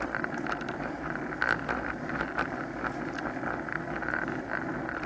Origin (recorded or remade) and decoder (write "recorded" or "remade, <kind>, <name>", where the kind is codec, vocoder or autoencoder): recorded